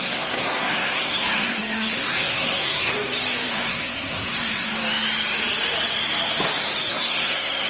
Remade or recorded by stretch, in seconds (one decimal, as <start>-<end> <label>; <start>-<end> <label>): 0.0-2.9 remade; 2.9-3.5 recorded; 3.5-4.7 remade; 4.7-6.9 recorded; 6.9-7.7 remade